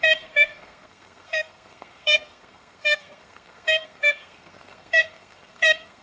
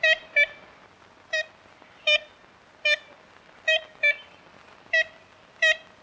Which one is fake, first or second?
first